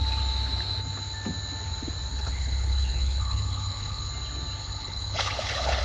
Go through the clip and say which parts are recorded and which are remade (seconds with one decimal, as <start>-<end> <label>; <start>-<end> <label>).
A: 0.0-2.1 recorded; 2.1-4.1 remade; 4.1-4.6 recorded; 4.6-5.8 remade